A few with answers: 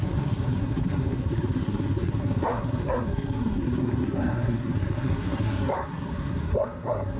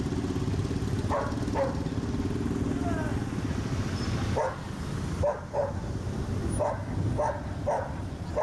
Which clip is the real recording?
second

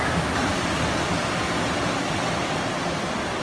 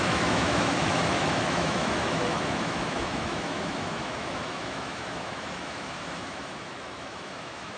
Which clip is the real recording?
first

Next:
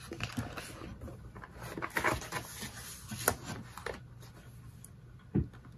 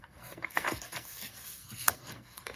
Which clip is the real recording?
first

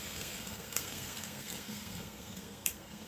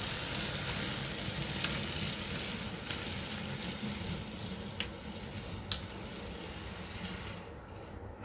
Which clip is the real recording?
second